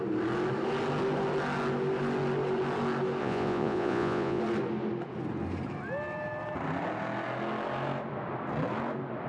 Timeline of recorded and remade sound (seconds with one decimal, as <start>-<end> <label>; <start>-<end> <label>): 0.0-3.2 recorded; 3.2-4.4 remade; 4.4-9.3 recorded